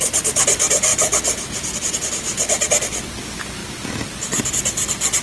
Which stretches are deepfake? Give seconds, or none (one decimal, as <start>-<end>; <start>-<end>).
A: none